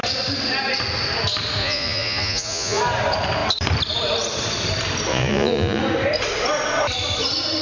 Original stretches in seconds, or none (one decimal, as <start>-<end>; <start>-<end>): 0.0-1.6; 2.8-5.1; 5.8-7.6